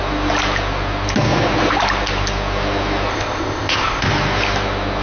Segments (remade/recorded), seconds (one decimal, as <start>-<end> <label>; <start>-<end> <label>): 0.0-3.1 recorded; 3.1-4.1 remade; 4.1-5.0 recorded